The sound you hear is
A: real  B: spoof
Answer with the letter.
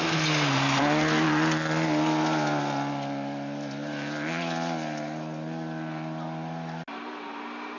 A